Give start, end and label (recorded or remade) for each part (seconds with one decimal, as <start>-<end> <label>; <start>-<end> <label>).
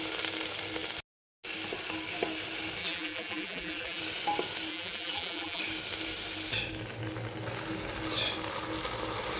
0.0-2.8 recorded; 2.8-4.0 remade; 4.0-4.7 recorded; 4.7-5.6 remade; 5.6-9.4 recorded